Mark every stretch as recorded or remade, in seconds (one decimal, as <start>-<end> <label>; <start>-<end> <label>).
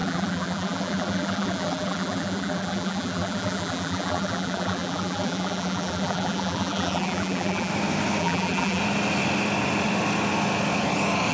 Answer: 0.0-7.7 remade; 7.7-8.2 recorded; 8.2-8.8 remade; 8.8-11.3 recorded